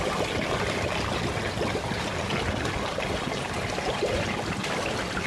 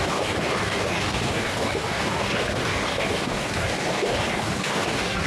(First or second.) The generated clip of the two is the second